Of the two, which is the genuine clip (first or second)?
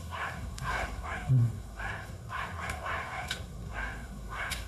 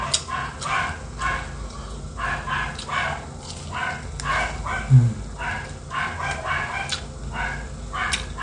second